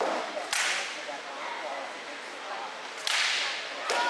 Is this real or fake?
real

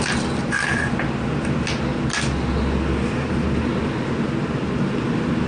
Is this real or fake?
real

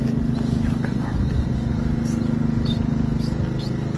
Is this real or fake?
real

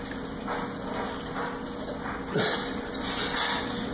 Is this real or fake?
real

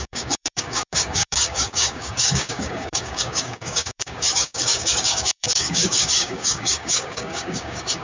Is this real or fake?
fake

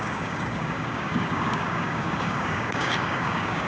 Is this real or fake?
fake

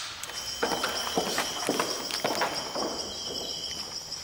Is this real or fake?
real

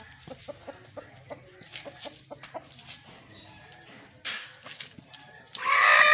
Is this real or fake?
real